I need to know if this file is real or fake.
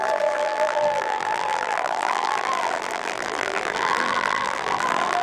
fake